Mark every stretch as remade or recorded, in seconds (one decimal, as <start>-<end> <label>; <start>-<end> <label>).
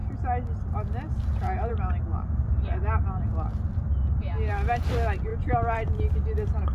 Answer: 0.0-2.1 recorded; 2.1-3.0 remade; 3.0-5.3 recorded; 5.3-6.0 remade; 6.0-6.7 recorded